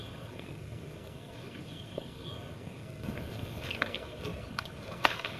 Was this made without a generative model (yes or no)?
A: no